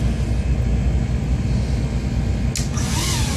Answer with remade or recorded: recorded